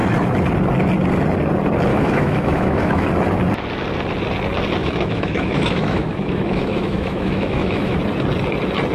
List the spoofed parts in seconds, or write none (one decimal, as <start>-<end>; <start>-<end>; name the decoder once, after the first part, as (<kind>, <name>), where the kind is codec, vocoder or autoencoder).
1.9-3.1 (autoencoder, DAC-VAE); 4.8-8.0